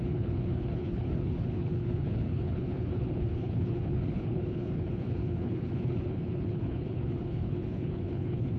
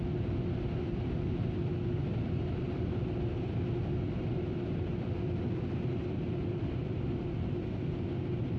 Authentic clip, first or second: second